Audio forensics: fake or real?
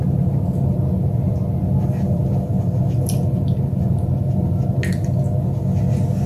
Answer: real